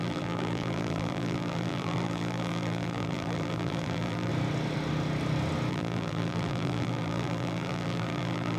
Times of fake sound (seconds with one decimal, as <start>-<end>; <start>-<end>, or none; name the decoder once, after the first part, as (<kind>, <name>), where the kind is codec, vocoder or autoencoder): 0.0-4.3 (vocoder, BigVGAN v2); 5.7-8.6